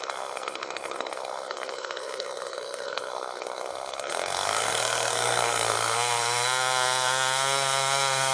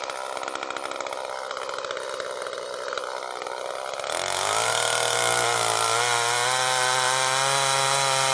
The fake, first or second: first